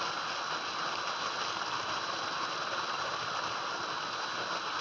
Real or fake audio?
real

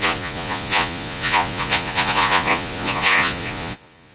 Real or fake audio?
fake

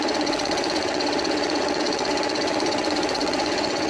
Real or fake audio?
fake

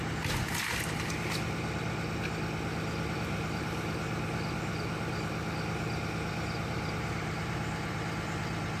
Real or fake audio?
real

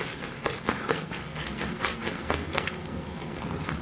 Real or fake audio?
fake